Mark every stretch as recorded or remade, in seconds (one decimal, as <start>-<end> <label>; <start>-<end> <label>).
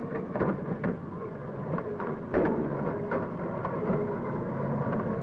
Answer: 0.0-2.9 remade; 2.9-5.2 recorded